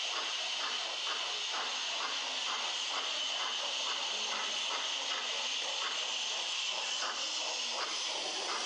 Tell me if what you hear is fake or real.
real